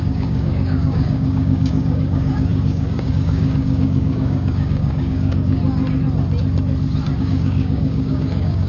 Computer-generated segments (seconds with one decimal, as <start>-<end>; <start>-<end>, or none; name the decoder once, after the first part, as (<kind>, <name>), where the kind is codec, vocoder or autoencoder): 0.0-5.6 (codec, DAC); 7.2-8.7